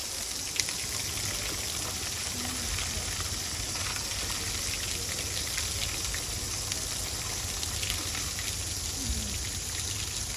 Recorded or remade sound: recorded